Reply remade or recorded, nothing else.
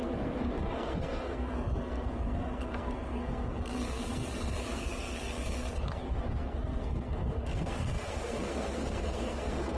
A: remade